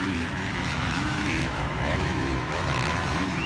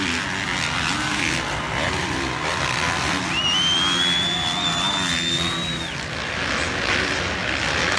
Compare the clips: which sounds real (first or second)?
second